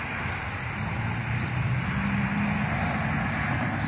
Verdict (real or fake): real